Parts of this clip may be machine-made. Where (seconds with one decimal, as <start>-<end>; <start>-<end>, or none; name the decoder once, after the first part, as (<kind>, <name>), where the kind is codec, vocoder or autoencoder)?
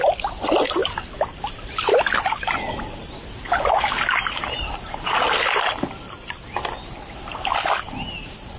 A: 0.8-1.7 (vocoder, BigVGAN v2)